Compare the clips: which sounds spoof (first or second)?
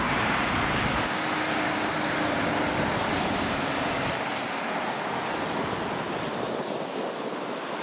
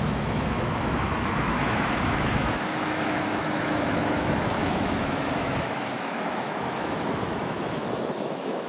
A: second